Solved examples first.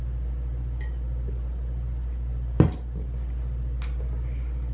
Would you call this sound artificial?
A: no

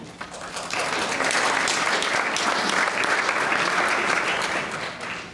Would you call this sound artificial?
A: no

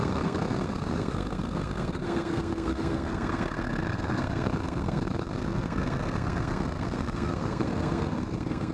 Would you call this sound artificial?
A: yes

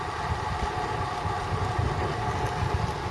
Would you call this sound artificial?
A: no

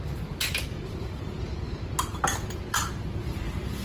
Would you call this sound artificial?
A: no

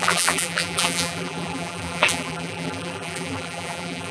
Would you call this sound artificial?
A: yes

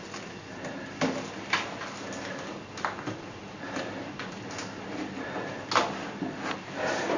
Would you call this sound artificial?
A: no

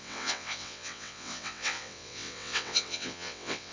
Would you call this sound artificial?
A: yes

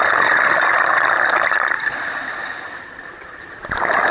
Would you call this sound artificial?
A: no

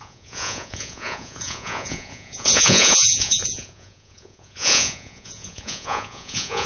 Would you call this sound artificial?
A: yes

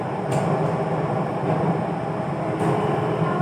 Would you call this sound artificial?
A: no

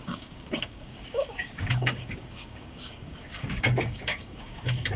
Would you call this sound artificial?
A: yes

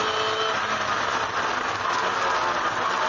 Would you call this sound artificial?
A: no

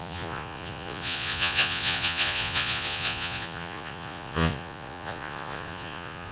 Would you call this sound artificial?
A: yes